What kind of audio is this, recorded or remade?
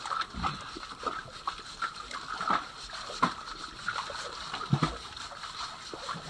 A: recorded